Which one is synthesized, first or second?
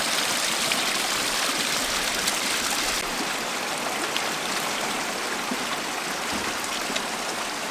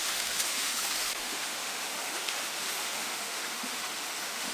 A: second